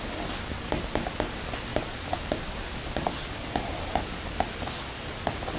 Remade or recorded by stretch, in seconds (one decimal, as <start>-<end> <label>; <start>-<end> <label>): 0.0-1.7 remade; 1.7-4.9 recorded; 4.9-5.6 remade